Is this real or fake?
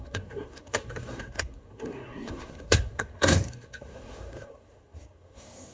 fake